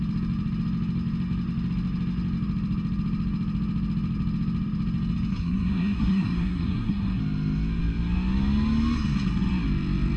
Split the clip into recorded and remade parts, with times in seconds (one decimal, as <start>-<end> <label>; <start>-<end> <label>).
0.0-5.3 recorded; 5.3-7.2 remade; 7.2-10.2 recorded